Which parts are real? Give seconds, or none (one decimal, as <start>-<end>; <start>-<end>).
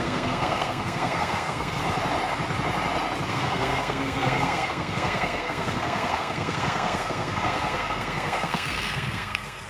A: 1.8-3.3